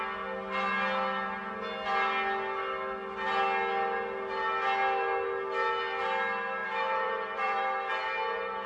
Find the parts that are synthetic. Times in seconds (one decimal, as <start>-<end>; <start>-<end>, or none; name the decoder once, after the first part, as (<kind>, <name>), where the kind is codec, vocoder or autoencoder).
6.6-7.9 (vocoder, BigVGAN v2)